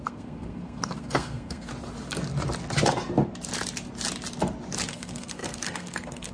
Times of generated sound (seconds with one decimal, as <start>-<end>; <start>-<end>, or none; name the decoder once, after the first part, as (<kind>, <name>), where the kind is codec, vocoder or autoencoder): 0.0-1.7 (codec, SNAC); 4.9-6.3